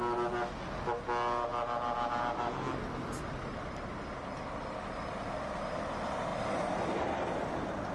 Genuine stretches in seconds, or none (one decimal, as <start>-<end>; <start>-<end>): 0.0-7.9

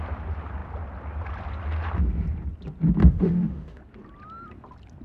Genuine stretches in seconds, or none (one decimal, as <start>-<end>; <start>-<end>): 0.0-3.0; 3.8-5.0

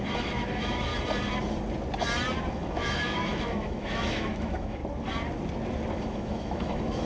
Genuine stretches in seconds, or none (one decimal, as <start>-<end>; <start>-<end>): 0.9-2.5; 4.8-6.0

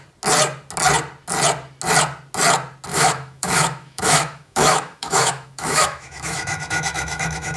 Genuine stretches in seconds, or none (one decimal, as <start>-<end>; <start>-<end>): 0.0-2.9

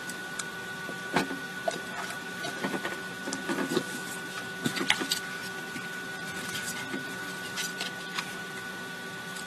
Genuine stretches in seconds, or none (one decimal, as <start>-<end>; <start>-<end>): 0.0-9.5

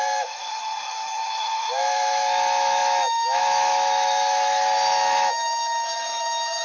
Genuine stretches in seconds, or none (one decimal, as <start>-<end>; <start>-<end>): none

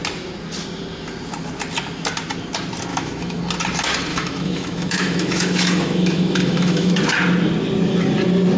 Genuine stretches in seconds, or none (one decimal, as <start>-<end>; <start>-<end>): 0.0-2.9; 3.4-4.1; 7.0-8.6